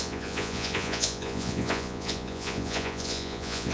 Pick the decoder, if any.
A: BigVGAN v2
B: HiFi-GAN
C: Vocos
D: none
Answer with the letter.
C